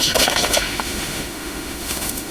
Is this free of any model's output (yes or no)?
no